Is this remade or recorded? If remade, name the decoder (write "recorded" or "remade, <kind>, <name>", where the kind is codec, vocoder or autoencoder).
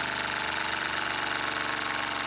recorded